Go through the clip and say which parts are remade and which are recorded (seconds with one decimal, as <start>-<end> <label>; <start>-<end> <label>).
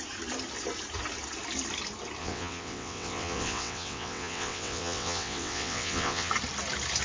0.0-2.2 recorded; 2.2-6.3 remade; 6.3-7.0 recorded